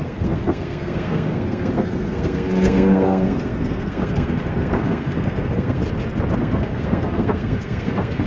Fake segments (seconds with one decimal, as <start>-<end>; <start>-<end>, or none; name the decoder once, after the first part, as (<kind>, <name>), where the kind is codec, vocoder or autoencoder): 0.0-5.8 (codec, SNAC); 6.4-8.3